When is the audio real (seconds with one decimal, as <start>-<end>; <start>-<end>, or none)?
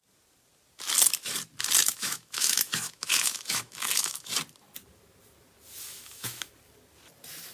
0.0-1.9; 4.3-5.9; 6.5-7.5